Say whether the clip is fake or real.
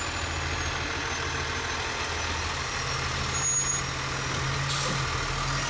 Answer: real